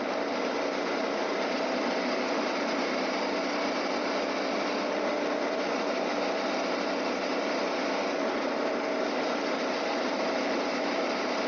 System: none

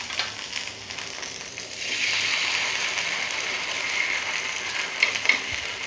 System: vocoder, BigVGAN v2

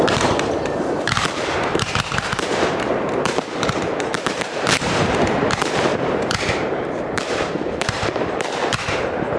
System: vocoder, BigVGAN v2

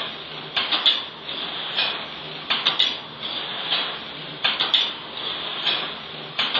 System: none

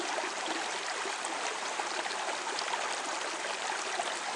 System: none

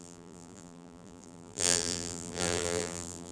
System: vocoder, BigVGAN v2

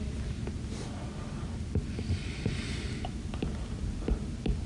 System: vocoder, BigVGAN v2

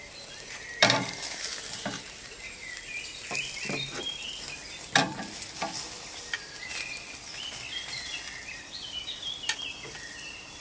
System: vocoder, BigVGAN v2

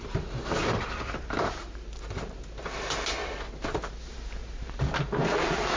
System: vocoder, BigVGAN v2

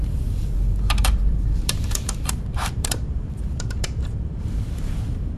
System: vocoder, BigVGAN v2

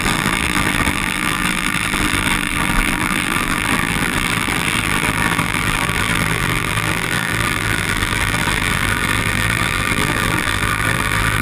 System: vocoder, BigVGAN v2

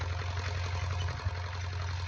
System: none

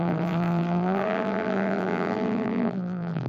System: vocoder, BigVGAN v2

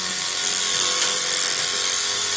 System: none